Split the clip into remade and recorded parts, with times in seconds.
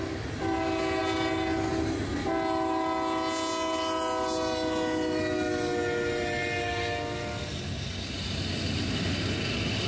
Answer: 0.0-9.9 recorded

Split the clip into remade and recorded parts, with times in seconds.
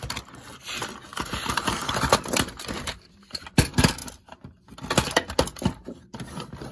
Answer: 0.0-1.1 recorded; 1.1-2.5 remade; 2.5-6.7 recorded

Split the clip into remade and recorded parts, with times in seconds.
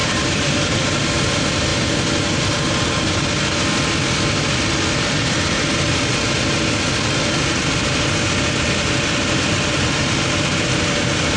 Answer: 0.0-0.9 remade; 0.9-11.4 recorded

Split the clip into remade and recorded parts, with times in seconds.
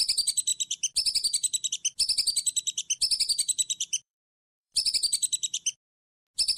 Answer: 0.0-3.6 recorded; 3.6-4.9 remade; 4.9-6.6 recorded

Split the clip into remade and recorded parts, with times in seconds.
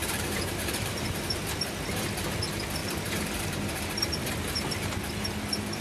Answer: 0.0-1.4 remade; 1.4-2.8 recorded; 2.8-3.7 remade; 3.7-5.8 recorded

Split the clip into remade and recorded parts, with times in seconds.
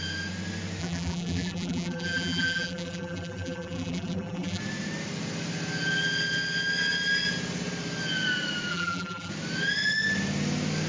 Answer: 0.0-0.8 recorded; 0.8-4.6 remade; 4.6-8.7 recorded; 8.7-9.3 remade; 9.3-10.9 recorded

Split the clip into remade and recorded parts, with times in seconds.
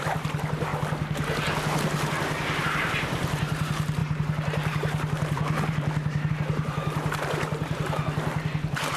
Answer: 0.0-0.7 remade; 0.7-2.6 recorded; 2.6-9.0 remade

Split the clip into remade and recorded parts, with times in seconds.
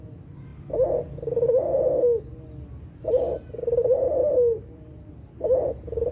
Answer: 0.0-4.2 recorded; 4.2-5.1 remade; 5.1-6.1 recorded